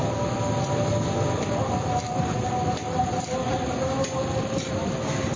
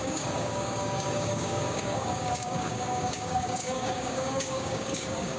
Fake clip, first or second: second